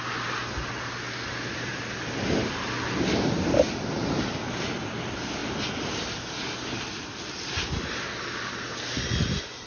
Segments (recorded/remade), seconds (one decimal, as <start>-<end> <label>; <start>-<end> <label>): 0.0-9.7 recorded